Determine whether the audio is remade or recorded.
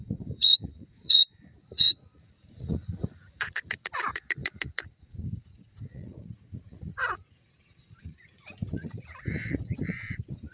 remade